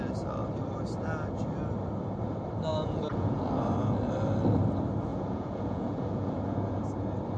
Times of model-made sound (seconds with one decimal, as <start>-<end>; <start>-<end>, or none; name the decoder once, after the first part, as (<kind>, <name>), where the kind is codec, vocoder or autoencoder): 2.7-3.5 (vocoder, Vocos); 5.1-6.8